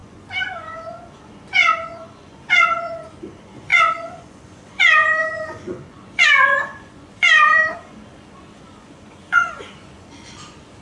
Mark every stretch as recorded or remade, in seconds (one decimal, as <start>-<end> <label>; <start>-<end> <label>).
0.0-10.8 remade